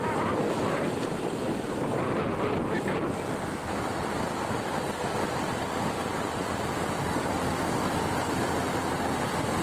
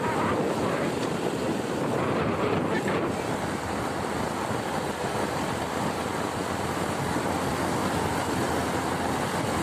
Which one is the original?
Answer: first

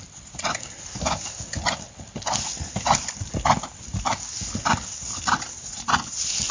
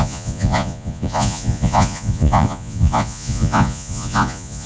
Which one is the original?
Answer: first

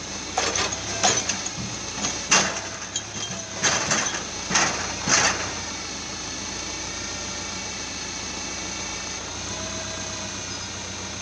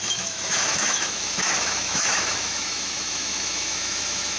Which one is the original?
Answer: first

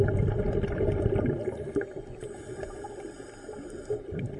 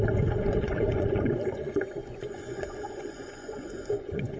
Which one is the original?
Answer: first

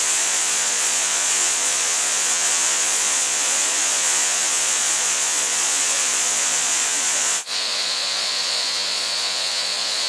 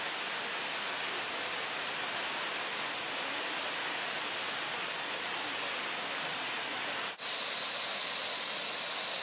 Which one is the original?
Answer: second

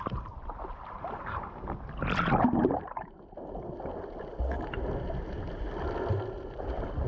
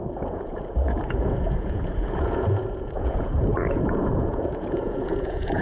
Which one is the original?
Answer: first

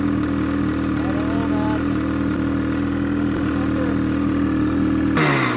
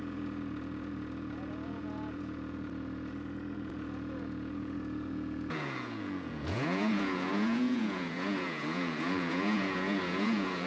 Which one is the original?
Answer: first